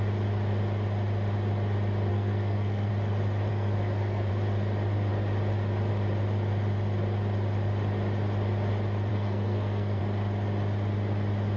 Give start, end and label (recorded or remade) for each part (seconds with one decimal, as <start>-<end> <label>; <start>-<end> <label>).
0.0-2.1 recorded; 2.1-2.9 remade; 2.9-3.5 recorded; 3.5-4.3 remade; 4.3-9.1 recorded; 9.1-10.0 remade; 10.0-11.6 recorded